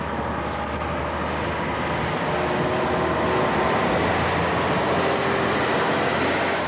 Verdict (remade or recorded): recorded